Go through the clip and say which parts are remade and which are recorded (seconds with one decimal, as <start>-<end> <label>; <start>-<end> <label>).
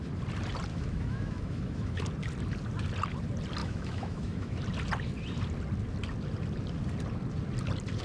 0.0-0.7 recorded; 0.7-2.0 remade; 2.0-3.6 recorded; 3.6-4.6 remade; 4.6-8.0 recorded